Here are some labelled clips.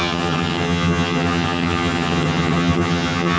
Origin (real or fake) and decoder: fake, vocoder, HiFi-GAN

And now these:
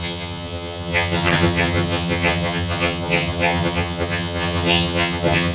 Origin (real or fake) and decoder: fake, vocoder, HiFi-GAN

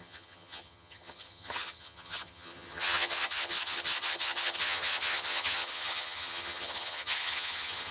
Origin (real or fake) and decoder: fake, vocoder, HiFi-GAN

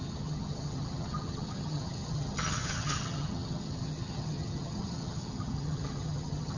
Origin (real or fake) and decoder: fake, vocoder, HiFi-GAN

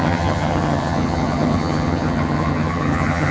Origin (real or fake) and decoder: fake, vocoder, HiFi-GAN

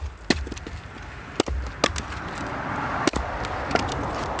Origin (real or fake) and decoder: real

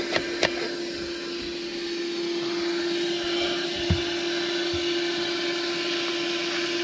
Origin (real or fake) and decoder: real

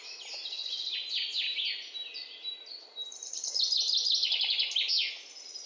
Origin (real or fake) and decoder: real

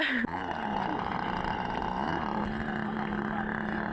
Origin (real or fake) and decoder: real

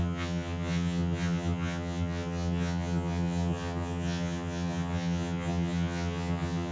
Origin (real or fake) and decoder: fake, vocoder, HiFi-GAN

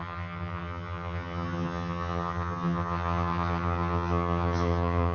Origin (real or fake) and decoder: fake, vocoder, HiFi-GAN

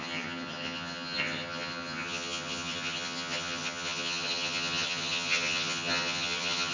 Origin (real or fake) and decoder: fake, vocoder, HiFi-GAN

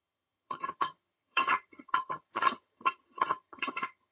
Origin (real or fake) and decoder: fake, vocoder, HiFi-GAN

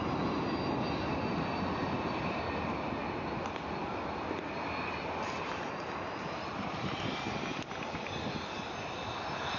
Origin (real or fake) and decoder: real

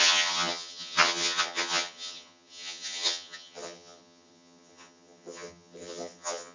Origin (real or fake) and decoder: fake, vocoder, HiFi-GAN